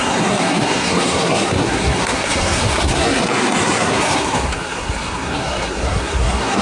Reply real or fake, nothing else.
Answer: fake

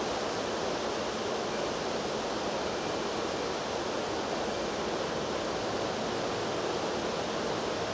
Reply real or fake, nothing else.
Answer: real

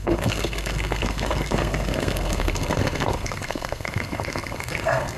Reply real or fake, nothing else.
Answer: fake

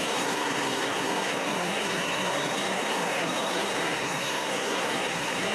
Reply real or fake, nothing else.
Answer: fake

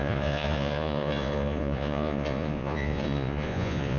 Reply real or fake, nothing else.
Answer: fake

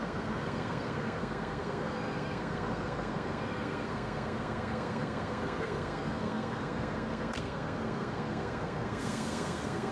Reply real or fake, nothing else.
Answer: fake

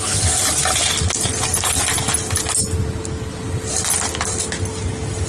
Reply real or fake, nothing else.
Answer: real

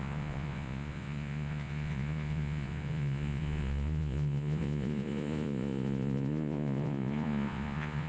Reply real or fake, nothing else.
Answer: fake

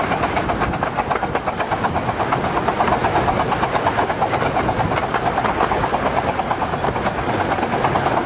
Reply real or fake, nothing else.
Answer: real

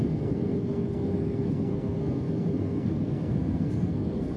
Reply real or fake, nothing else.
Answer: fake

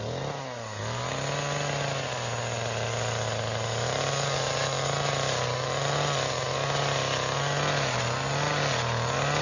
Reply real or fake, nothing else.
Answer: real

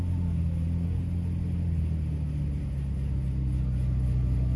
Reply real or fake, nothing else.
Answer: real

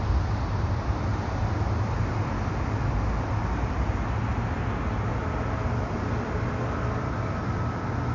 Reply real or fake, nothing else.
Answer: real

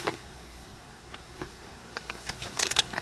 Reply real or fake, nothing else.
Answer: fake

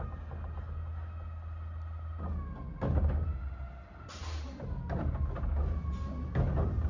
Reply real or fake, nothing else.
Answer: real